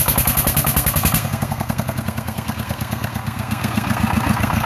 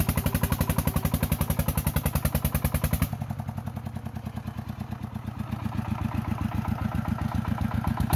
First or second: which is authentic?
second